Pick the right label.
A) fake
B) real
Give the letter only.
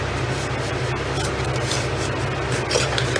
B